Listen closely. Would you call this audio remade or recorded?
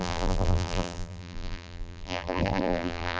remade